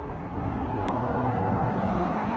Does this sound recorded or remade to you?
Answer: remade